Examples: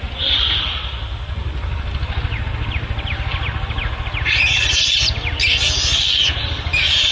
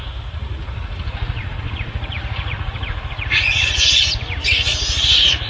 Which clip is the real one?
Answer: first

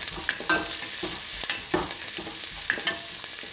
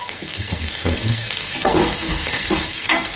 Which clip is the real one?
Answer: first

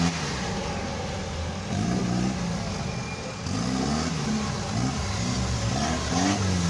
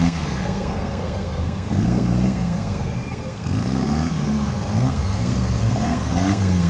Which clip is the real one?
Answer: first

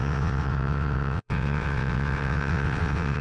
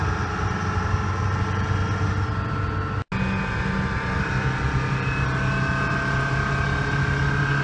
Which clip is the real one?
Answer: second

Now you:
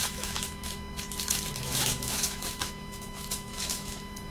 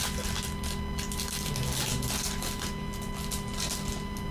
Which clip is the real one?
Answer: second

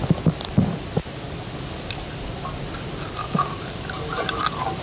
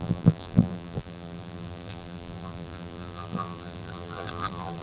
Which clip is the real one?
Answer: first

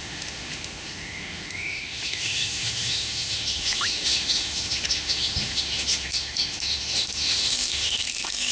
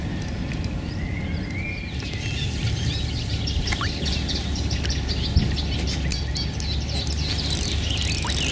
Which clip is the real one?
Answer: second